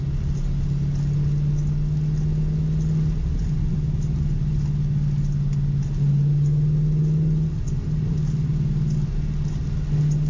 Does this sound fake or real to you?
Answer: real